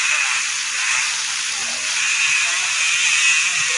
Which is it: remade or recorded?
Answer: recorded